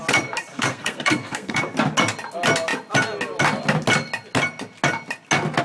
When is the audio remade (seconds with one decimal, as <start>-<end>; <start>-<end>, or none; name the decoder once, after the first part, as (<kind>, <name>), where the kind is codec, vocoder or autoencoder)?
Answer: 0.5-1.6 (codec, SNAC)